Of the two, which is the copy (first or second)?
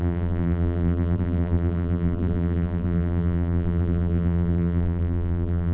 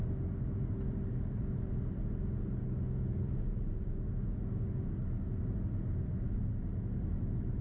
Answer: first